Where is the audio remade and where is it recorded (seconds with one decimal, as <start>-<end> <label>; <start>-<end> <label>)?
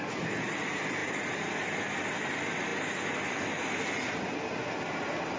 0.0-5.4 recorded